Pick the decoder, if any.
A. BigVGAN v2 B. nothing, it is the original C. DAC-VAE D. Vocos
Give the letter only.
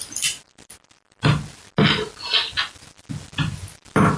B